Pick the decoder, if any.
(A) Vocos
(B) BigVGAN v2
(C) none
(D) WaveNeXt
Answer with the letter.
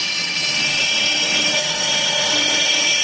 D